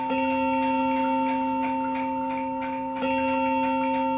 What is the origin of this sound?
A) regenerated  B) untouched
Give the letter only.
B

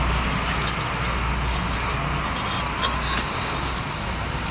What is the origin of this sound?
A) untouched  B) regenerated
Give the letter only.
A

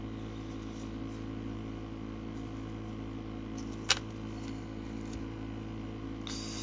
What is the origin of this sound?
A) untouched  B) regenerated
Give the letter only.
A